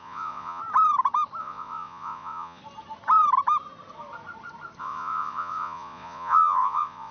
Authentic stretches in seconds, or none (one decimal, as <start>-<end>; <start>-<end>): 0.6-1.4; 2.6-4.8